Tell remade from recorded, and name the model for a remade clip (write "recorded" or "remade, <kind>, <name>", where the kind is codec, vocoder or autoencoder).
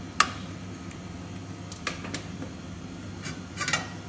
recorded